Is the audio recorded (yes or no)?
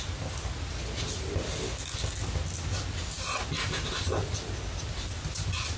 yes